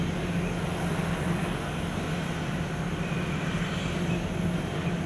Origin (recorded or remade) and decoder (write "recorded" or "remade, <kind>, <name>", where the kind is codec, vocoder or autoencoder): recorded